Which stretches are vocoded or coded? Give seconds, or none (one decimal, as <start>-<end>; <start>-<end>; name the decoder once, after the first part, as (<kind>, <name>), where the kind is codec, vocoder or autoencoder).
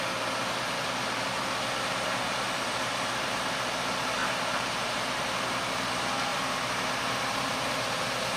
1.9-3.4 (vocoder, BigVGAN v2); 4.2-5.3; 6.3-8.0